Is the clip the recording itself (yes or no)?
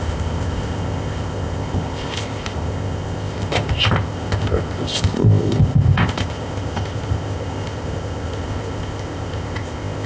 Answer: no